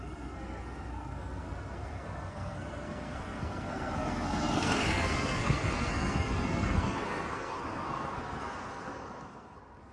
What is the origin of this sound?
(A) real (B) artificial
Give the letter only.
B